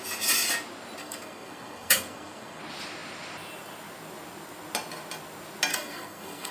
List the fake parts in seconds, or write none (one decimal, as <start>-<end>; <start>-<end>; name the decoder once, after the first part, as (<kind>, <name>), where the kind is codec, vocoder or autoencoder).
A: 1.0-2.6 (codec, SNAC); 5.7-6.5